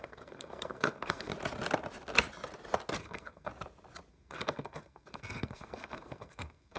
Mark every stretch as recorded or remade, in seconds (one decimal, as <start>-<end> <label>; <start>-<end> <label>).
0.0-1.3 remade; 1.3-3.0 recorded; 3.0-3.5 remade; 3.5-4.1 recorded; 4.1-6.8 remade